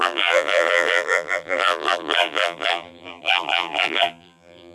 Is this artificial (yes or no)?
yes